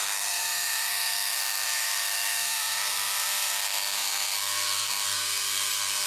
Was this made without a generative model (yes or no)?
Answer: no